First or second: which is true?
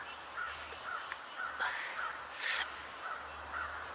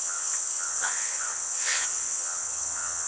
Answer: first